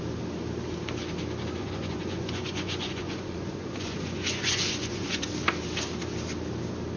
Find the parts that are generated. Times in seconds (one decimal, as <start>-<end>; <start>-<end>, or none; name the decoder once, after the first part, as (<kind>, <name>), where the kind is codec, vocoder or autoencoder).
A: 1.6-5.3 (vocoder, Vocos)